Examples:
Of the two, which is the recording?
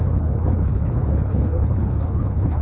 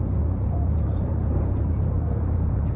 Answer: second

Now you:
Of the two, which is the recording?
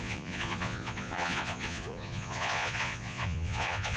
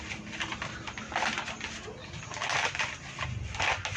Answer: second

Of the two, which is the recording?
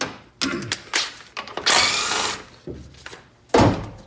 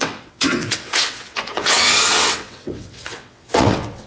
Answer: first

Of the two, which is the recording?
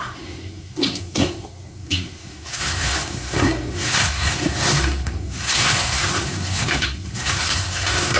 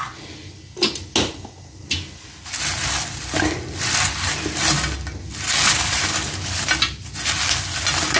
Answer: second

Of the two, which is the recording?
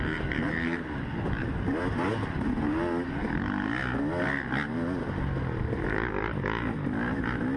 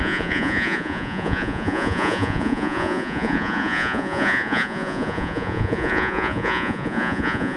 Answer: first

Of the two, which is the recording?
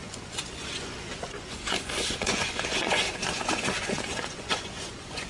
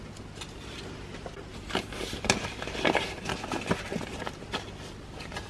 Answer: second